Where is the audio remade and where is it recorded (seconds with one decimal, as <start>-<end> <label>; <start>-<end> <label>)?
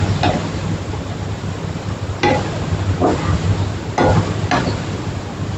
0.0-5.6 recorded